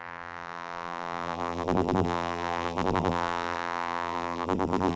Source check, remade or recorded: remade